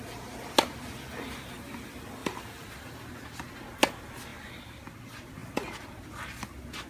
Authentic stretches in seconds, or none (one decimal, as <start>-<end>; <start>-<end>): 0.0-2.2; 3.0-6.9